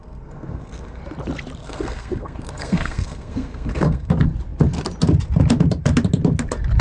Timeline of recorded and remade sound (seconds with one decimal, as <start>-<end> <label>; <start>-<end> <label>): 0.0-1.0 remade; 1.0-1.6 recorded; 1.6-4.1 remade; 4.1-6.8 recorded